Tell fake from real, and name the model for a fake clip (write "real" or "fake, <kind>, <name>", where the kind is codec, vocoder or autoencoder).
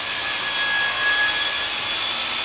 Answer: real